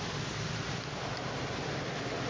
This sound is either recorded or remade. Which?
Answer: recorded